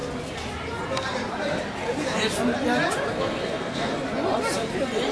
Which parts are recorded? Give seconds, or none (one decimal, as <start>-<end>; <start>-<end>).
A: 0.0-3.1; 3.9-5.1